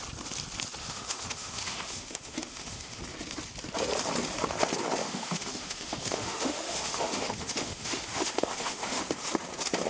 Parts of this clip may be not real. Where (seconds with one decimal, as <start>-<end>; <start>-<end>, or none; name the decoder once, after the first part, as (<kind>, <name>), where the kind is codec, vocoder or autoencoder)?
0.8-3.0 (autoencoder, DAC-VAE); 5.0-9.0